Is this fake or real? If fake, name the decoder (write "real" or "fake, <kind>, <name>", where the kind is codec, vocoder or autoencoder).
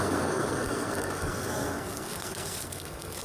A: fake, codec, SNAC